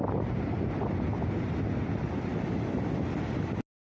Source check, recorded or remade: recorded